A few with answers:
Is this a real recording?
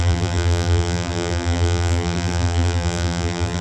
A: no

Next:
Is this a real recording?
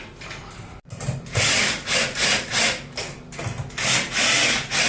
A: yes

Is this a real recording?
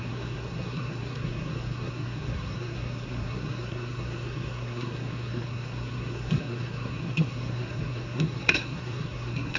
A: no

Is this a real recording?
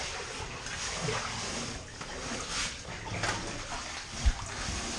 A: yes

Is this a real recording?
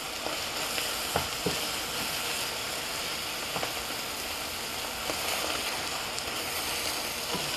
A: yes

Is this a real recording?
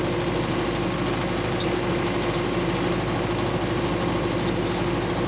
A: yes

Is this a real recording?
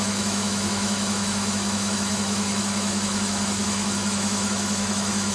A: no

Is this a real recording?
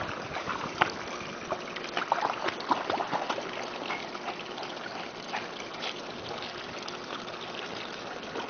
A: yes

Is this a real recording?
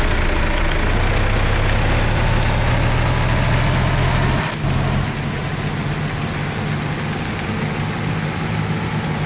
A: yes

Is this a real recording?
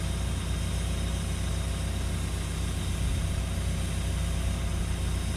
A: yes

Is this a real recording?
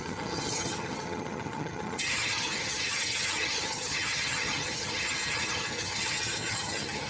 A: no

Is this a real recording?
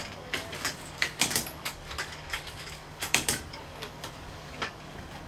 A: no